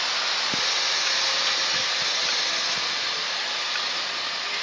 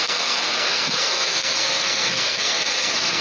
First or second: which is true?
first